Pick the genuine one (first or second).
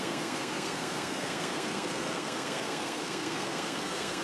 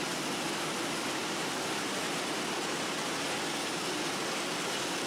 second